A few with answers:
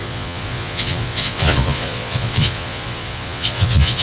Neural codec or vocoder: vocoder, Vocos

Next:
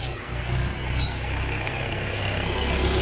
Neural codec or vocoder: codec, SNAC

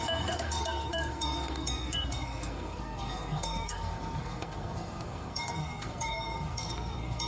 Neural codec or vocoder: codec, SNAC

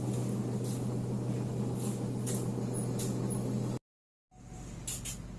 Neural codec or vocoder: none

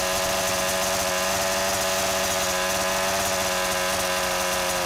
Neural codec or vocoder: none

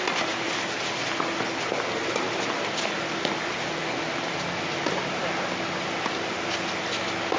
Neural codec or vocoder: none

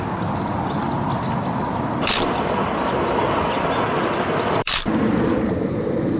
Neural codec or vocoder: vocoder, BigVGAN v2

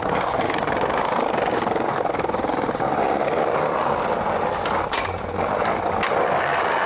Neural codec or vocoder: none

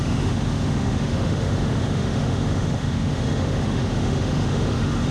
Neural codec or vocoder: autoencoder, DAC-VAE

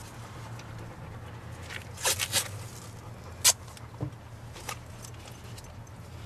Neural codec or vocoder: none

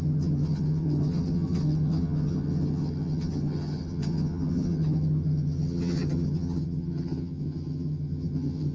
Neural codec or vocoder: vocoder, HiFi-GAN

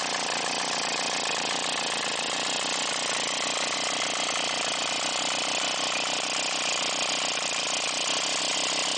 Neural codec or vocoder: none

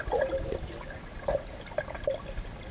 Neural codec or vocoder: none